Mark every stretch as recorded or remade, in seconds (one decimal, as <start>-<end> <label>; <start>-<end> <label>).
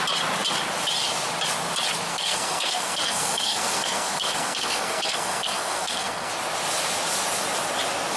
0.0-2.1 recorded; 2.1-6.3 remade; 6.3-8.2 recorded